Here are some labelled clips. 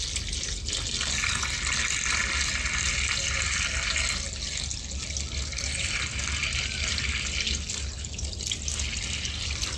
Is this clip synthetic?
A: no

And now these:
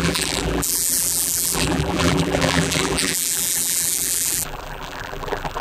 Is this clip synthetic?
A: yes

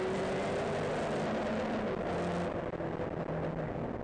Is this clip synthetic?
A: no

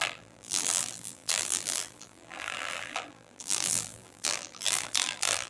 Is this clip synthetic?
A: yes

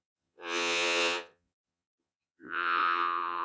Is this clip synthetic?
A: yes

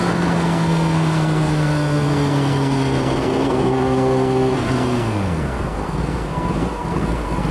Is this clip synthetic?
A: yes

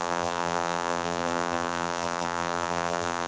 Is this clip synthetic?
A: yes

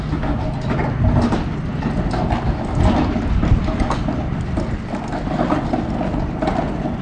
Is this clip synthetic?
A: no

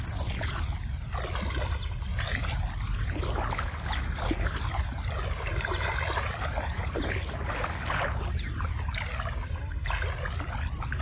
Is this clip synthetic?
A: no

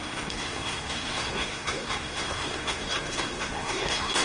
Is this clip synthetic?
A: yes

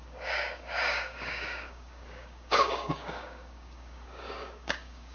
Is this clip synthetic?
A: yes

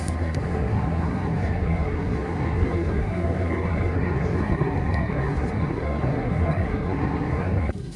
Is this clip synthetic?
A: yes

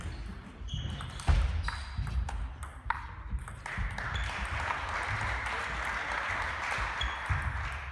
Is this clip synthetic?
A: no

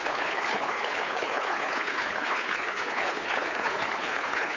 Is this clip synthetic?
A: yes